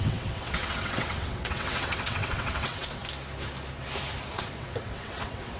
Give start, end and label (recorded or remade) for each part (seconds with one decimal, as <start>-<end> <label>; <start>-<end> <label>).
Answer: 0.0-3.0 remade; 3.0-4.3 recorded; 4.3-5.6 remade